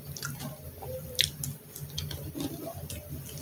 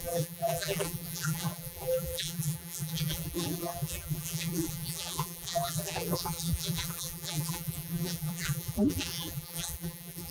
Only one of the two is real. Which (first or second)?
first